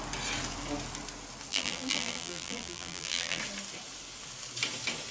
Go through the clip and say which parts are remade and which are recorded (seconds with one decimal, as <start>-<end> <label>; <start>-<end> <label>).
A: 0.0-1.5 recorded; 1.5-3.4 remade; 3.4-5.1 recorded